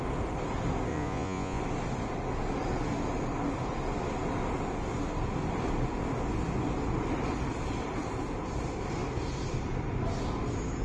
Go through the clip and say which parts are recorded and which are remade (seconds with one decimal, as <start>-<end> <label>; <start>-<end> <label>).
0.0-0.9 recorded; 0.9-1.6 remade; 1.6-10.8 recorded

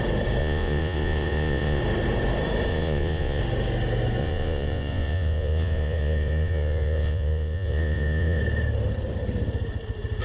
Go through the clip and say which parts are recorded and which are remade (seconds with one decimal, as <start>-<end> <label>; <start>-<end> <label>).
0.0-0.4 recorded; 0.4-1.8 remade; 1.8-2.7 recorded; 2.7-3.4 remade; 3.4-4.2 recorded; 4.2-8.4 remade; 8.4-10.2 recorded

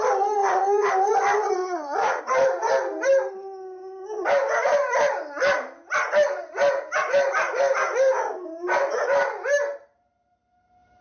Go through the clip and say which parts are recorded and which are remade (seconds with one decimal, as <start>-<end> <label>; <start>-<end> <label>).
0.0-0.4 recorded; 0.4-0.9 remade; 0.9-1.6 recorded; 1.6-2.2 remade; 2.2-11.0 recorded